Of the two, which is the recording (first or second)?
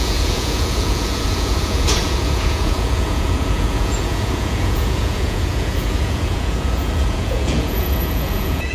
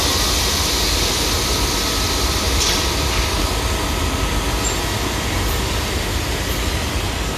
second